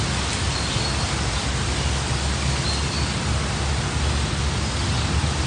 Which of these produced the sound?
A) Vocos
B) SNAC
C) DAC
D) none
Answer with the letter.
D